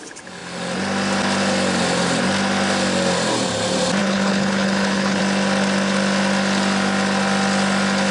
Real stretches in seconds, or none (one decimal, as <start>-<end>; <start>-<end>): 0.0-4.0; 5.2-8.1